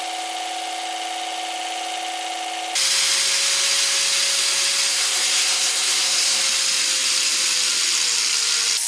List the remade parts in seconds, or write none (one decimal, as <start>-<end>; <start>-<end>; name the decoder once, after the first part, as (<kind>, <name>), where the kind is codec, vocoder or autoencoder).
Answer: 4.9-6.4 (codec, SNAC)